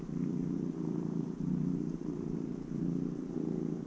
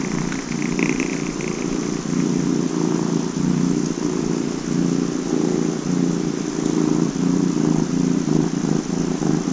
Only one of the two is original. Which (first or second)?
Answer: second